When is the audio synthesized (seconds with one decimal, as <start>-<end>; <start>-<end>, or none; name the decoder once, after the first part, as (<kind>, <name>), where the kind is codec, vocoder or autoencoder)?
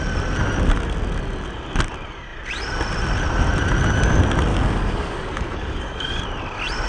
4.5-6.2 (codec, DAC)